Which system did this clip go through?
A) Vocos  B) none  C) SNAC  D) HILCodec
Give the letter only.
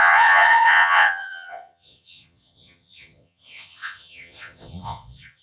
A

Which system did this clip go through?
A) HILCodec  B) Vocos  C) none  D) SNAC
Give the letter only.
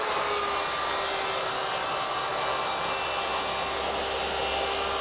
C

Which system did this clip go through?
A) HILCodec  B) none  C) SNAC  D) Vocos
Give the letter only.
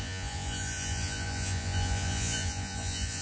D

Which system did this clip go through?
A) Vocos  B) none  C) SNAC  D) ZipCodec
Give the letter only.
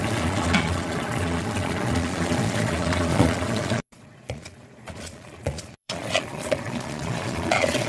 A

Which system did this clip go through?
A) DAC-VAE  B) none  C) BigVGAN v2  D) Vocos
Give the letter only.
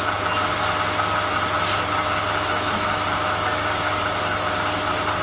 B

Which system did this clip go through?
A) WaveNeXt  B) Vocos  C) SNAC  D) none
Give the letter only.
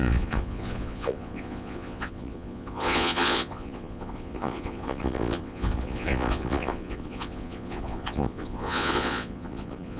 B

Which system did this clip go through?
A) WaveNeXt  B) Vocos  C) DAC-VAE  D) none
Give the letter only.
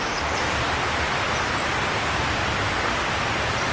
D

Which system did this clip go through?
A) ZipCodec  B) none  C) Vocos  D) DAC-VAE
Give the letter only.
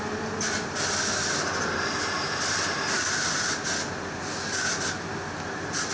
B